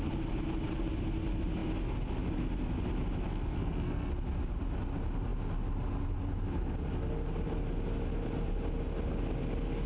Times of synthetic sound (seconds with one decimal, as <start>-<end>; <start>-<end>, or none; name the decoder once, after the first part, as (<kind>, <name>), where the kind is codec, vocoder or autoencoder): 3.3-4.1 (codec, SNAC)